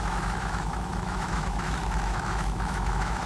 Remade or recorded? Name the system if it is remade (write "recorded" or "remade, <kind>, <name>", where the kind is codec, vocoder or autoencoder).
remade, autoencoder, DAC-VAE